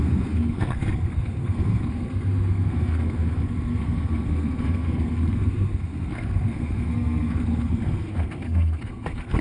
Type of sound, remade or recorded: remade